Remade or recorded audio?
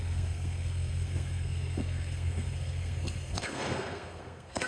remade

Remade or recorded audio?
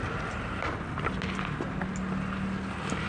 recorded